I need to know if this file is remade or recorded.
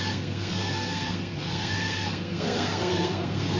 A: remade